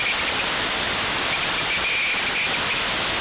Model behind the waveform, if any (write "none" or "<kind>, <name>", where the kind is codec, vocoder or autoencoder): none